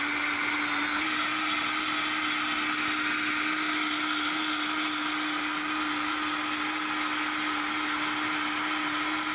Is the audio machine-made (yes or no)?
no